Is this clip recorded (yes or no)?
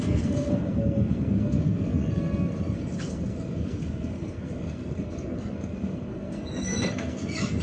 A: no